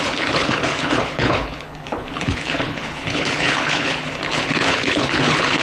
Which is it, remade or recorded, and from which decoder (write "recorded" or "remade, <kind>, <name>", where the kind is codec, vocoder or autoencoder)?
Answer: remade, codec, HILCodec